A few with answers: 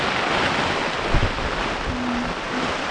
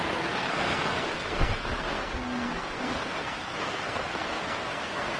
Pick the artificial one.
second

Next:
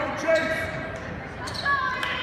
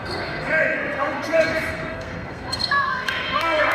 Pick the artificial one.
second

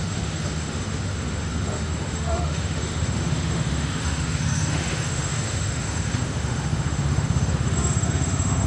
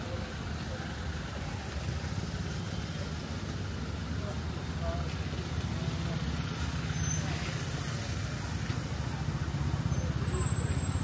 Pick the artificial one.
first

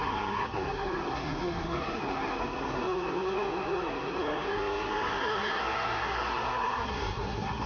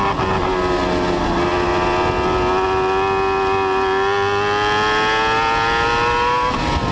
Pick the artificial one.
first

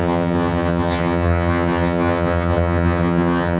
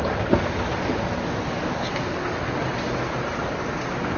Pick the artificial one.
first